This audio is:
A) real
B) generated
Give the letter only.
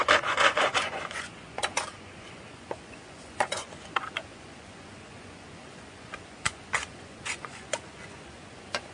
B